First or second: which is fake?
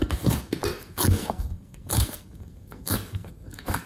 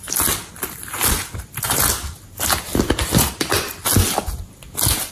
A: first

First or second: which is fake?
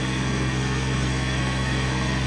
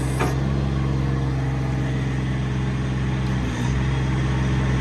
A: first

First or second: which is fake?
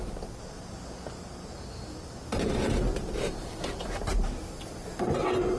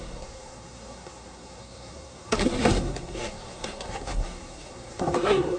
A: second